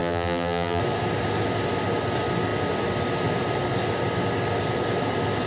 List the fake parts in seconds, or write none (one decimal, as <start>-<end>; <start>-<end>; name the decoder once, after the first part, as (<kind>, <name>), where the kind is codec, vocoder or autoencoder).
0.0-0.8 (vocoder, BigVGAN v2)